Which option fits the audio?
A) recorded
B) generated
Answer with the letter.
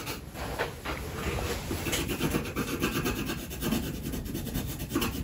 A